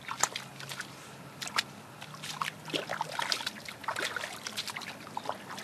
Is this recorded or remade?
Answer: recorded